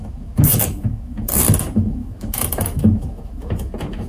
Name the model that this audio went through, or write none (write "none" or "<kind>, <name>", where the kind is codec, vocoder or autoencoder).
autoencoder, DAC-VAE